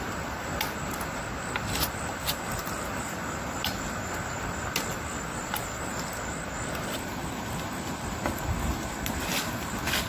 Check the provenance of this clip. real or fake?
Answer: real